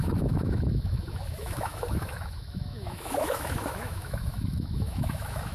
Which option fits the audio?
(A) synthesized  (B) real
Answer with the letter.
A